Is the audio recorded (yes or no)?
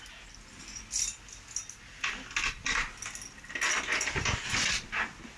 yes